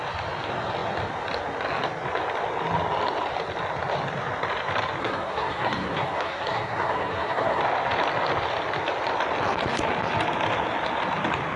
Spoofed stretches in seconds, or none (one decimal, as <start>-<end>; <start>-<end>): 5.0-7.6